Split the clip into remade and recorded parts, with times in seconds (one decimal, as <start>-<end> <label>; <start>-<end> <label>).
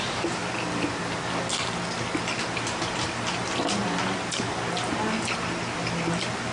0.0-6.5 recorded